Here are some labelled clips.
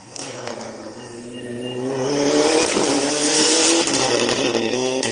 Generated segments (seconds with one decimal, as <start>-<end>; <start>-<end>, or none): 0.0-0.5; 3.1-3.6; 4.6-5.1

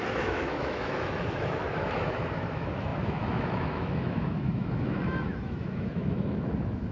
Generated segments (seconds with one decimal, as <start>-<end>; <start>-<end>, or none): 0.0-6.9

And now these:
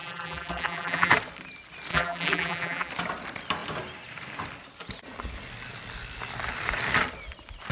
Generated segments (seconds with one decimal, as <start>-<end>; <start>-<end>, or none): 0.0-1.1; 1.9-2.9